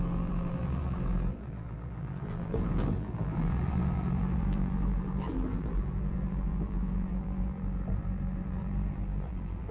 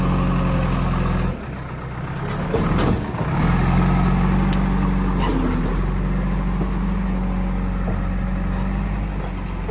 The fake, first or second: first